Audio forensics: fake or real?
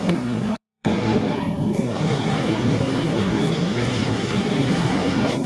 fake